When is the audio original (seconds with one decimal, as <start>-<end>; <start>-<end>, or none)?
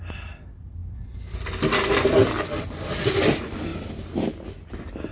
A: 0.0-5.1